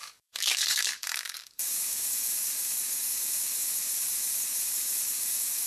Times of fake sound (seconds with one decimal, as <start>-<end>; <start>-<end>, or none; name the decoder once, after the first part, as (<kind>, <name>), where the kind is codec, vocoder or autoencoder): 0.0-5.7 (codec, DAC)